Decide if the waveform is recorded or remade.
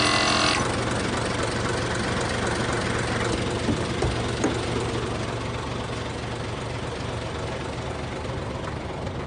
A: recorded